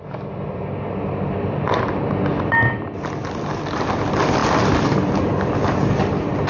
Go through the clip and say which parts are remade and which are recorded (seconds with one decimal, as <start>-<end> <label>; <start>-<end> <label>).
0.0-6.5 recorded